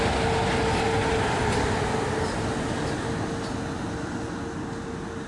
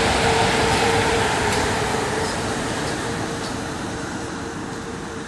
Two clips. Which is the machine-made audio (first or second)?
second